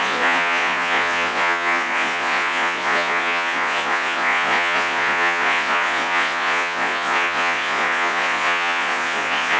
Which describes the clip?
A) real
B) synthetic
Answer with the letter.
B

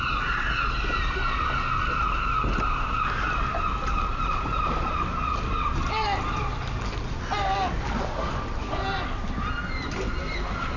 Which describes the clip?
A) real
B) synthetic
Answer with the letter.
A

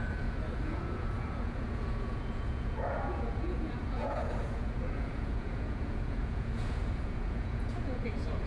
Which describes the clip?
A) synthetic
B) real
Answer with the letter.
A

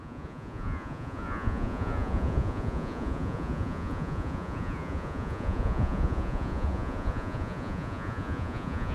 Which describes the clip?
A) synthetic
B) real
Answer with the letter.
A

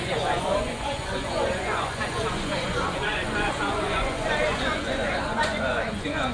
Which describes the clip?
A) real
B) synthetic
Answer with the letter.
B